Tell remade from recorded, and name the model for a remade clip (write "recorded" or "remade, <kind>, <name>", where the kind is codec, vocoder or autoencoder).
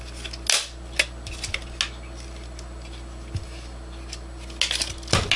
recorded